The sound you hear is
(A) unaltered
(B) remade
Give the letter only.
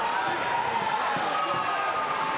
A